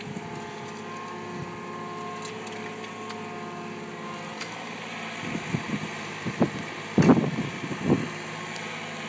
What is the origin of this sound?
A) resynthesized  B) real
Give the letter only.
B